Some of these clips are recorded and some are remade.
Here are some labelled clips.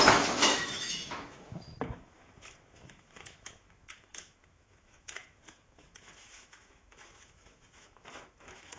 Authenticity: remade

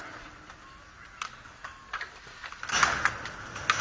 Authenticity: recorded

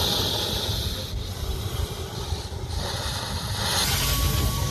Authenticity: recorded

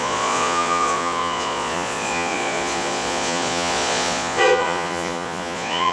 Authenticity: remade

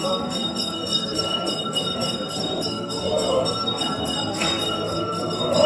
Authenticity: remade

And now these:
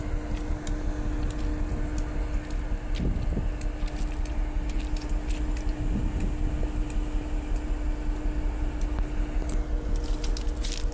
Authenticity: recorded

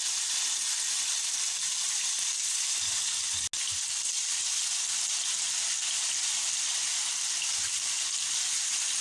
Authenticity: recorded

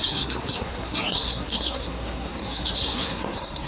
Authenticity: remade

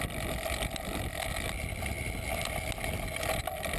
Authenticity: recorded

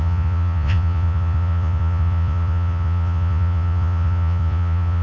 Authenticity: remade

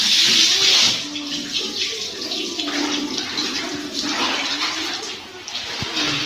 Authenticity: recorded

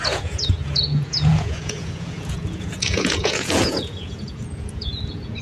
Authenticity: remade